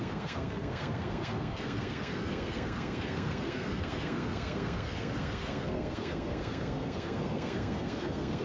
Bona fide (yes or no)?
no